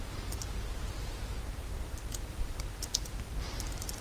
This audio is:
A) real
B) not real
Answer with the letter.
B